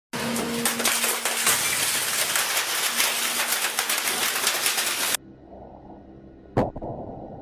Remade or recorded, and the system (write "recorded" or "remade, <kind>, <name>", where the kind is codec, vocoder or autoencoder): recorded